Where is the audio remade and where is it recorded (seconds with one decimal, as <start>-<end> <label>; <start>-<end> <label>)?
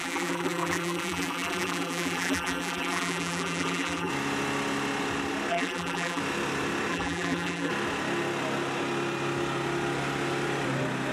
0.0-4.1 remade; 4.1-5.5 recorded; 5.5-6.2 remade; 6.2-6.9 recorded; 6.9-7.7 remade; 7.7-11.1 recorded